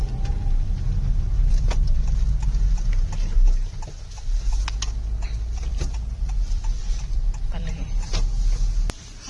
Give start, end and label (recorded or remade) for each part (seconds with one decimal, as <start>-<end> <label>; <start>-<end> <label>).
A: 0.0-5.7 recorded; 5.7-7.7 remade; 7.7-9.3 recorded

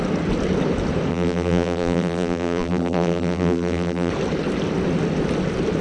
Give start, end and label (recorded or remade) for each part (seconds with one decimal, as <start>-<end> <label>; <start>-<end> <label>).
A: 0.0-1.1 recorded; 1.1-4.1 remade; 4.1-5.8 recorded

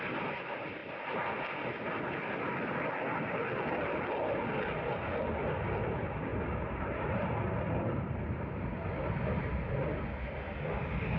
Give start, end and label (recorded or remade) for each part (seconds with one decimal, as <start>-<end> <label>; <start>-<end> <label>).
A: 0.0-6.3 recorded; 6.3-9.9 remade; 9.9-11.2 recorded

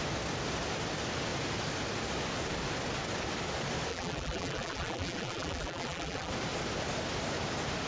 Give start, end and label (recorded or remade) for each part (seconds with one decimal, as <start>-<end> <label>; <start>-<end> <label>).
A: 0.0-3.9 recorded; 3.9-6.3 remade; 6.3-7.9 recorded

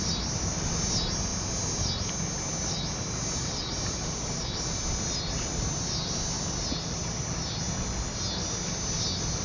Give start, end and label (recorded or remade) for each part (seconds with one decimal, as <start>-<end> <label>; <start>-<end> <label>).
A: 0.0-9.4 recorded

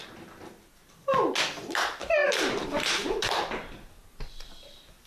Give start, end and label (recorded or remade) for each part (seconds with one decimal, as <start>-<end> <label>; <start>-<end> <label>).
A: 0.0-2.2 recorded; 2.2-3.4 remade; 3.4-5.1 recorded

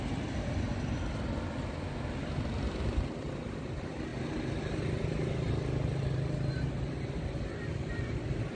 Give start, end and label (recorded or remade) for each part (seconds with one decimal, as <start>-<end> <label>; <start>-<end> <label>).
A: 0.0-8.6 recorded